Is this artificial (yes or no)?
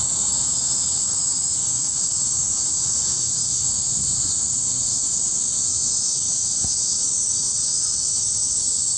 yes